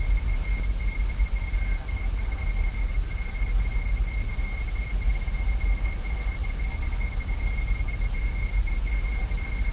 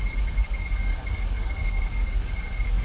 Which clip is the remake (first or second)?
second